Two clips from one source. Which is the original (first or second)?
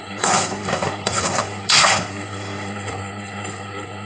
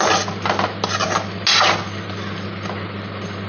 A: second